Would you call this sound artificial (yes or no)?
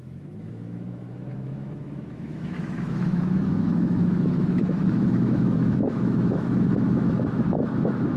yes